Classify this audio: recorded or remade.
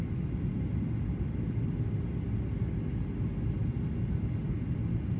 recorded